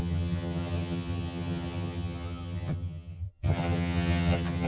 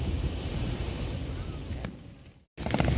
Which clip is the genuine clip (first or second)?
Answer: second